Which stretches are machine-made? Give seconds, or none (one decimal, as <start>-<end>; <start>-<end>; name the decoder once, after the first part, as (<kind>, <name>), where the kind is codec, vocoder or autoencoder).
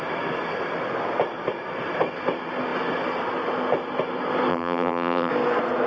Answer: 4.5-5.3 (vocoder, BigVGAN v2)